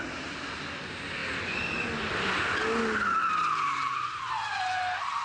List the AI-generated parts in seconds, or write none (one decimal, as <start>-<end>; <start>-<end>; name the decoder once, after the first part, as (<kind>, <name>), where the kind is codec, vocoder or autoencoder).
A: none